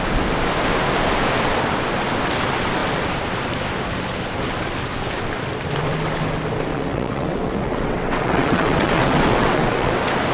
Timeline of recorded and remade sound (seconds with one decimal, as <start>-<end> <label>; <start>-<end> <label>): 0.0-6.7 recorded; 6.7-9.9 remade; 9.9-10.3 recorded